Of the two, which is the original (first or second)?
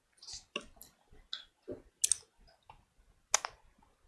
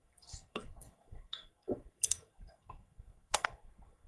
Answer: first